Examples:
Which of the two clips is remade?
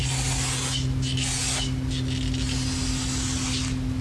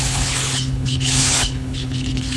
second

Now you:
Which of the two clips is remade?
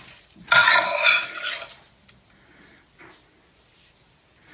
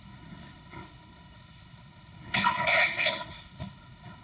second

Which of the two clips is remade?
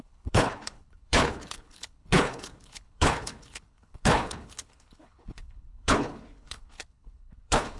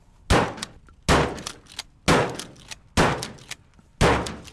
first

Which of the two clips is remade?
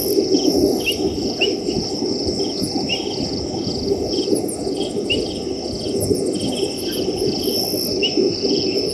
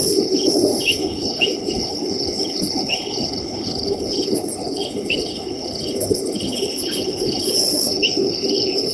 second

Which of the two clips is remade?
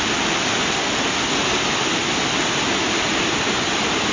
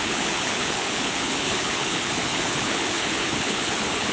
second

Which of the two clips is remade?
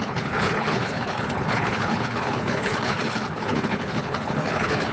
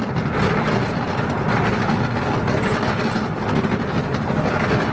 first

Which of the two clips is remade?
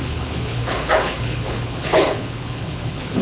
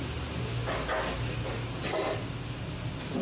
first